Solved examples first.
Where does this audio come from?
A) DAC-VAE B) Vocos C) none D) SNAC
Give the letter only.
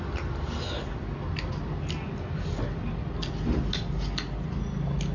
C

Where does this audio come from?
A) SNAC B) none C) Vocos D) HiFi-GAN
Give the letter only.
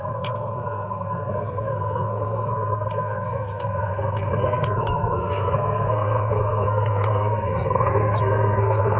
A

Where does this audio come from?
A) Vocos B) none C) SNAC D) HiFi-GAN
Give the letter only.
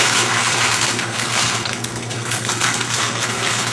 C